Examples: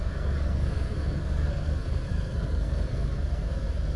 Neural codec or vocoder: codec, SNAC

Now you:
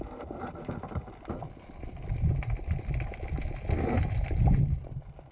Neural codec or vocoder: none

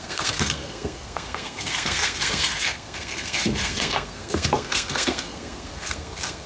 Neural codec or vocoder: codec, SNAC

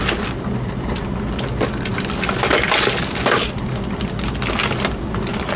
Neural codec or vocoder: none